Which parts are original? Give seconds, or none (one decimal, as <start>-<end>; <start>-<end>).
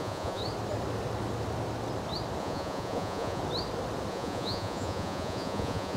0.4-2.4; 3.4-4.1